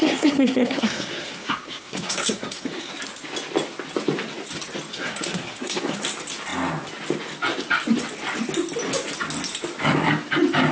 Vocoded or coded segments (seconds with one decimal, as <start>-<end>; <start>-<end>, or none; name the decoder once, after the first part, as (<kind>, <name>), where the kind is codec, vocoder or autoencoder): 0.0-2.9 (codec, SNAC); 4.9-6.0